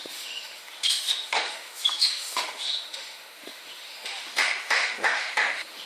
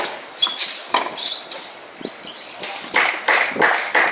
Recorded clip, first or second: second